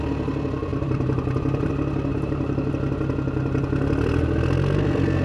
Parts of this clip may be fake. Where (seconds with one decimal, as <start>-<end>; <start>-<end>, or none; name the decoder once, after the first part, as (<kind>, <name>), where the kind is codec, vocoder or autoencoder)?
0.7-1.7 (vocoder, BigVGAN v2); 2.1-2.7